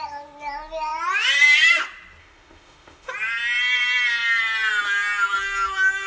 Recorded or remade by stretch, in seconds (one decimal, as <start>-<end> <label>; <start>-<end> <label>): 0.0-2.2 recorded; 2.2-3.1 remade; 3.1-6.1 recorded